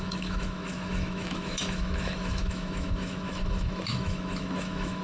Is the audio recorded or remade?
remade